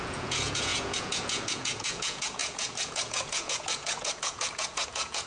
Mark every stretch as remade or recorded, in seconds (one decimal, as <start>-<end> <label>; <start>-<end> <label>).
0.0-5.3 remade